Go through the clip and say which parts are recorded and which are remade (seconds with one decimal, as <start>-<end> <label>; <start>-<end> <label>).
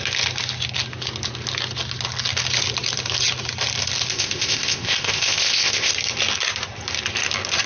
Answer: 0.0-4.1 recorded; 4.1-5.9 remade; 5.9-7.7 recorded